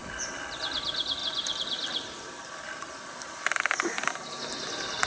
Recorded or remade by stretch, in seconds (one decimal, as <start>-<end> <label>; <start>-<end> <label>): 0.0-1.2 recorded; 1.2-4.3 remade; 4.3-5.1 recorded